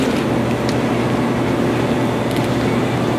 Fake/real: real